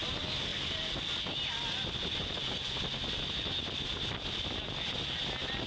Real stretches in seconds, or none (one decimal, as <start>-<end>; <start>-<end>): 0.0-2.0; 2.8-5.7